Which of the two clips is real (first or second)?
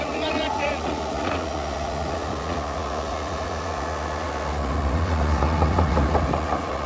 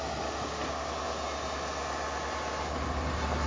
second